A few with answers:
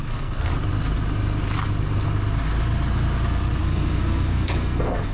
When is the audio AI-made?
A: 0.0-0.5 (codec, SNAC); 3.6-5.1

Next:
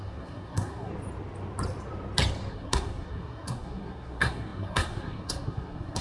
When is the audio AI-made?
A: 0.0-0.9 (codec, SNAC); 2.5-6.0

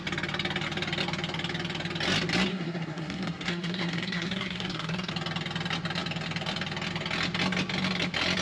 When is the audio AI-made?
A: 2.5-5.1 (codec, SNAC)

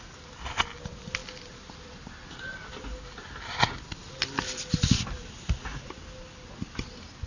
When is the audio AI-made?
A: none

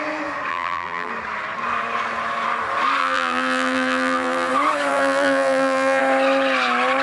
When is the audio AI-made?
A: 0.5-1.1 (vocoder, BigVGAN v2); 3.0-4.5; 4.9-6.0

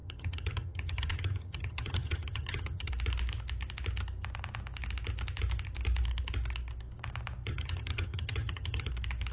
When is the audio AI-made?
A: 0.0-2.9 (vocoder, HiFi-GAN); 7.5-8.9